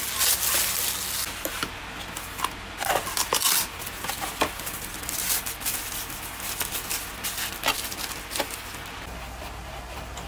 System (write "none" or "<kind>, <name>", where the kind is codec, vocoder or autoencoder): none